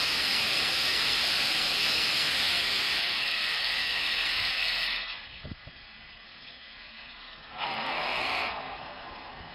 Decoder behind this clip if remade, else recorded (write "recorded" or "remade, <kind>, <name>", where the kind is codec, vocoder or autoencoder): remade, codec, SNAC